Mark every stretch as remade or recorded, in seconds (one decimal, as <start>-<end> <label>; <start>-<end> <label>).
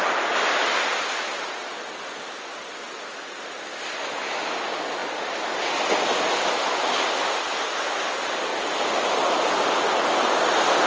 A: 0.0-10.9 recorded